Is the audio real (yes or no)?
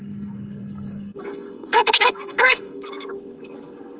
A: no